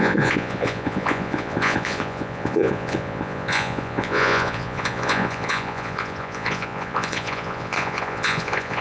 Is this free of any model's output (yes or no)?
no